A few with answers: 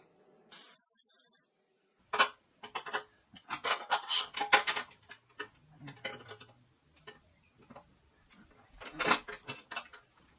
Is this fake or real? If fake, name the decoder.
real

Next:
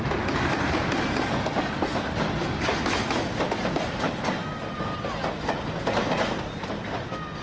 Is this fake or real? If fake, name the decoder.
real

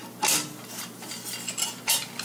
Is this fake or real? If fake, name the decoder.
real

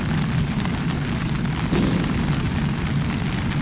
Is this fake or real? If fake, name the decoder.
real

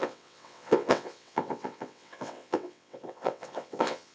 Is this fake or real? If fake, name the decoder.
fake, vocoder, WaveNeXt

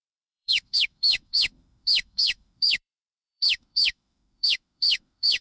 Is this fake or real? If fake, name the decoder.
fake, autoencoder, DAC-VAE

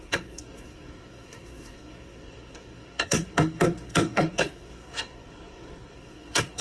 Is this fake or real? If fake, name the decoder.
fake, codec, SNAC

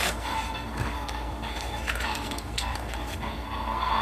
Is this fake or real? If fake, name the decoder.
fake, codec, SNAC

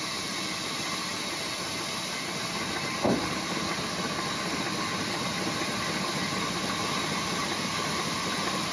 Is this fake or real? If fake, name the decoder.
real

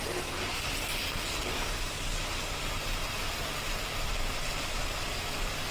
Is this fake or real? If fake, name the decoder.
real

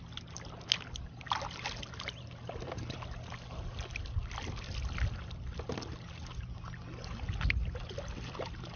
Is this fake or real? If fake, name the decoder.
real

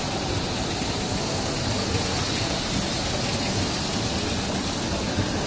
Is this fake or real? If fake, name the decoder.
real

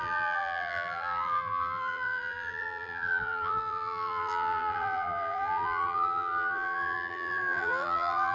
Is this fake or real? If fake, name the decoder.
fake, vocoder, BigVGAN v2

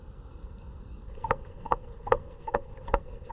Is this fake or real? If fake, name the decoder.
fake, codec, SNAC